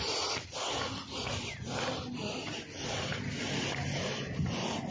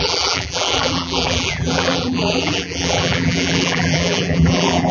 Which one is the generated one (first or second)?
second